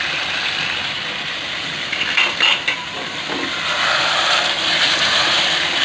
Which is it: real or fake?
real